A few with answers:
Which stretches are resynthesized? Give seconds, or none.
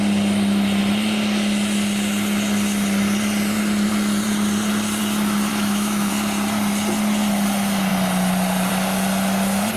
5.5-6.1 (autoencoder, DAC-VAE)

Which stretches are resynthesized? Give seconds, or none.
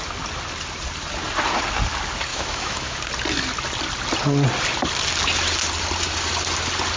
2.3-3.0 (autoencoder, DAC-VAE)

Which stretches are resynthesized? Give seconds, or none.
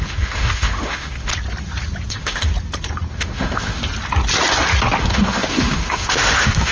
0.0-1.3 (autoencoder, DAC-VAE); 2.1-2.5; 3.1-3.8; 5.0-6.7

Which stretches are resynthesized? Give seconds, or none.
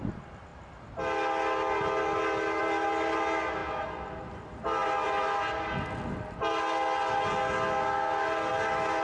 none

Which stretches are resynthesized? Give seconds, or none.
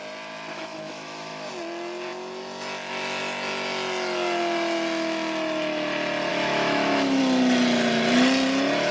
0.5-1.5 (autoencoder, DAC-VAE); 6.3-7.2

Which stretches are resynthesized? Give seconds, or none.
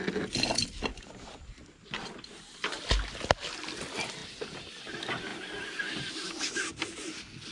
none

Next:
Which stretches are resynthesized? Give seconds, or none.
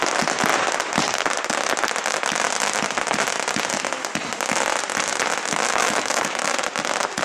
5.8-6.4 (autoencoder, DAC-VAE)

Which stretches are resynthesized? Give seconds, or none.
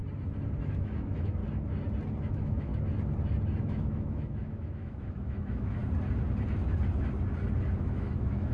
0.6-1.4 (autoencoder, DAC-VAE); 2.3-2.7; 3.6-5.8; 7.8-8.5